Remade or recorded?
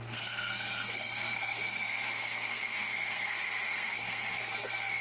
remade